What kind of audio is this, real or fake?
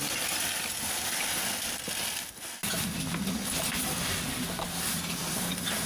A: real